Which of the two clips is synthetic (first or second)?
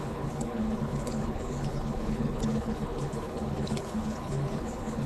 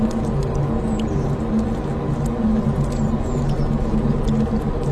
first